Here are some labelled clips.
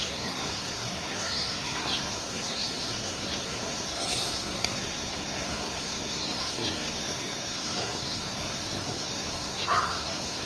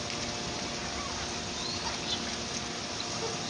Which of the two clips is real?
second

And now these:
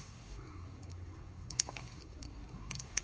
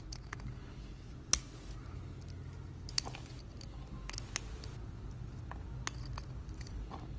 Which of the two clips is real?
second